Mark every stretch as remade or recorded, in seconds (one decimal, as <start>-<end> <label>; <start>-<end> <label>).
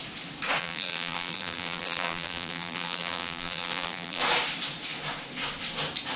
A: 0.0-0.6 recorded; 0.6-4.2 remade; 4.2-6.2 recorded